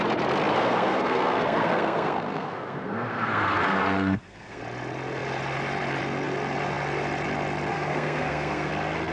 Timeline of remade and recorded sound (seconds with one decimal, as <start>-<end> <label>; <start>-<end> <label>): 0.0-0.5 recorded; 0.5-4.6 remade; 4.6-7.7 recorded; 7.7-8.7 remade; 8.7-9.1 recorded

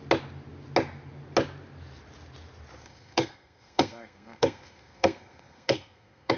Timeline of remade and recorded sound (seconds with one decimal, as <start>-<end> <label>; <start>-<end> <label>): 0.0-2.8 recorded; 2.8-6.4 remade

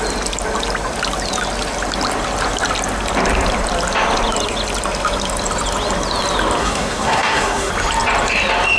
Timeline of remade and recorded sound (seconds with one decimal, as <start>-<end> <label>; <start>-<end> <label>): 0.0-6.6 recorded; 6.6-7.7 remade; 7.7-8.8 recorded

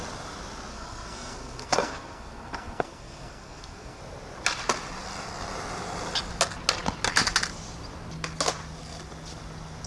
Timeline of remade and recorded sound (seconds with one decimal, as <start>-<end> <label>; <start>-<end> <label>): 0.0-0.7 recorded; 0.7-4.0 remade; 4.0-9.9 recorded

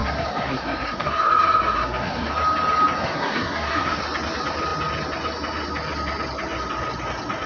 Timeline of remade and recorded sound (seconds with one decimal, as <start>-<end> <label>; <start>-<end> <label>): 0.0-2.3 remade; 2.3-3.0 recorded; 3.0-4.0 remade; 4.0-7.5 recorded

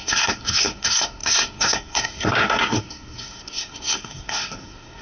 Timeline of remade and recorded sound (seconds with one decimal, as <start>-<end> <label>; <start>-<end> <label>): 0.0-5.0 remade